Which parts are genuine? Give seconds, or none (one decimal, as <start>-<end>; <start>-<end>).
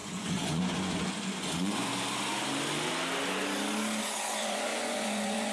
1.9-4.0